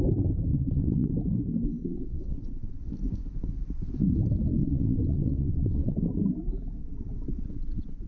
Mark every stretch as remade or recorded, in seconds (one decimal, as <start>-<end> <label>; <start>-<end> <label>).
0.0-0.5 recorded; 0.5-1.1 remade; 1.1-1.8 recorded; 1.8-2.9 remade; 2.9-4.6 recorded; 4.6-6.0 remade; 6.0-6.8 recorded; 6.8-8.1 remade